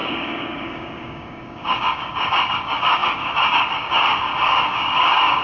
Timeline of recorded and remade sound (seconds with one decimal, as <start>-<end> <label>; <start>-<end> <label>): 0.0-5.4 remade